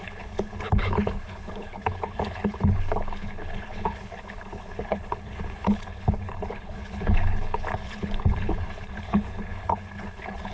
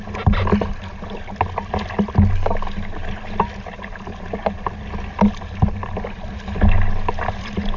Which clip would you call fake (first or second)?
first